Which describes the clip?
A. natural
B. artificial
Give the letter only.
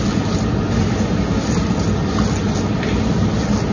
A